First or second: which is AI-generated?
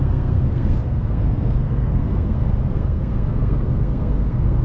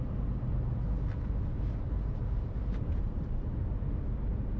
first